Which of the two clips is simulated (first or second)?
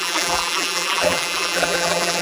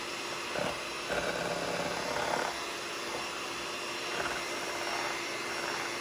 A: first